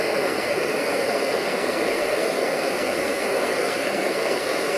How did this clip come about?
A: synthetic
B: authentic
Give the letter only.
A